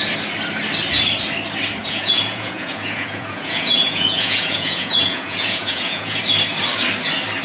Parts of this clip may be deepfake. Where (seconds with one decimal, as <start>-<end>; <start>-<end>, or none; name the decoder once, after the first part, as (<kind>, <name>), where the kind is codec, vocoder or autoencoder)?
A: 1.8-6.2 (vocoder, Vocos)